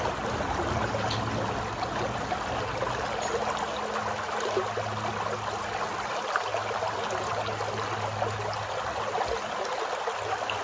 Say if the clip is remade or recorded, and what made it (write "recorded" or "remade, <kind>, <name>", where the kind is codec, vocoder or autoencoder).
recorded